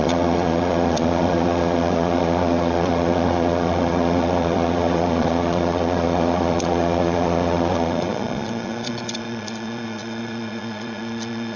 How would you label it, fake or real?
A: fake